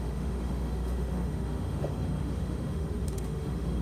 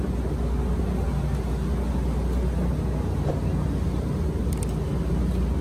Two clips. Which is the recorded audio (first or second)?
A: second